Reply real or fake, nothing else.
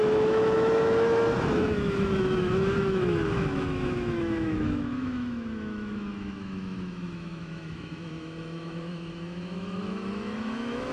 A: fake